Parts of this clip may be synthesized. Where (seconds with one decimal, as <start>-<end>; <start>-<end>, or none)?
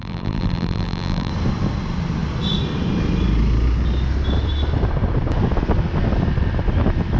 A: 0.0-1.3